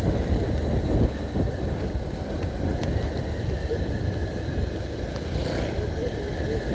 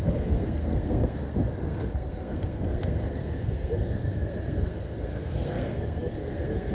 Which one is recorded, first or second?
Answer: first